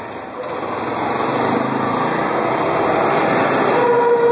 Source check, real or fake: real